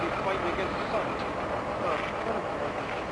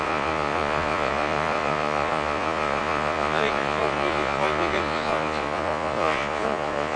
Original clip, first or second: first